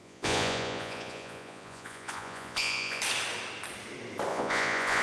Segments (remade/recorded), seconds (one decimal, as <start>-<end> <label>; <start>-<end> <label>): 0.0-3.0 remade; 3.0-4.3 recorded; 4.3-5.0 remade